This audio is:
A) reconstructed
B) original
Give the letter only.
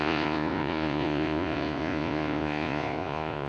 A